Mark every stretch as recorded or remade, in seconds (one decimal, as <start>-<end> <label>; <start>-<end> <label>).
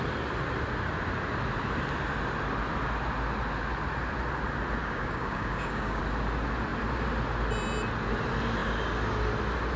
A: 0.0-4.8 recorded; 4.8-6.0 remade; 6.0-9.8 recorded